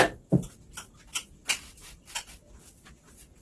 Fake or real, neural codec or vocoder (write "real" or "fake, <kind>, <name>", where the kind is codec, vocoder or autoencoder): real